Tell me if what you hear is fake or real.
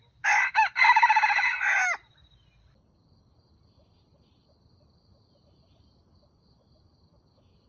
real